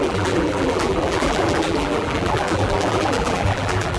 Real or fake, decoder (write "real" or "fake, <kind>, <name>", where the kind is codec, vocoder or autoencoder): fake, vocoder, BigVGAN v2